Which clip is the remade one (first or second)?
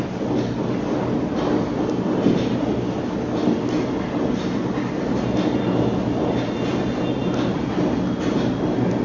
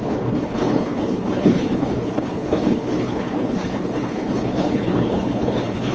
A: second